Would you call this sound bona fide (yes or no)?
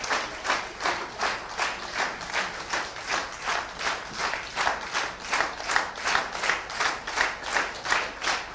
yes